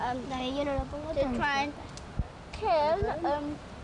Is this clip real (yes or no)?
yes